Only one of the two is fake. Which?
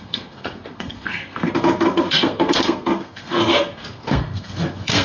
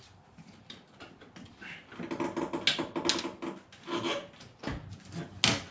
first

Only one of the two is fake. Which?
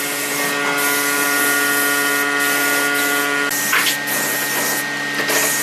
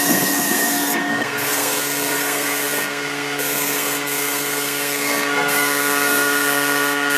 second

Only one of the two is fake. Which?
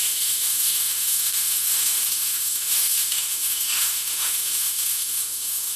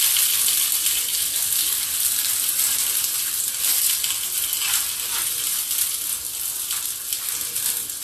first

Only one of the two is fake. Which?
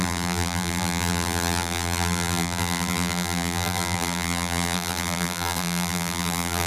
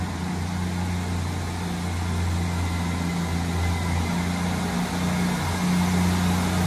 first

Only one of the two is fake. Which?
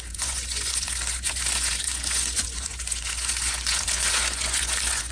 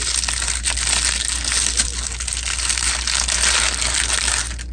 first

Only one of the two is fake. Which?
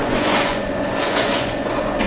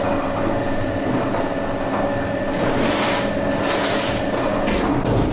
first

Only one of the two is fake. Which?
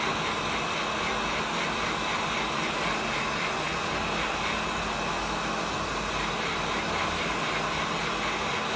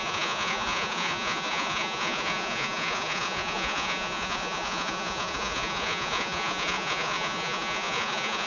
second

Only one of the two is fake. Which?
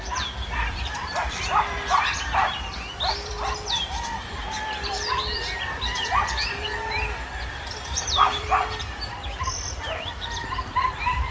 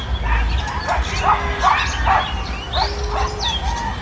first